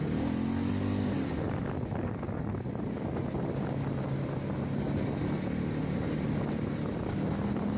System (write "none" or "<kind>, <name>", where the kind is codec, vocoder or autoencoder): none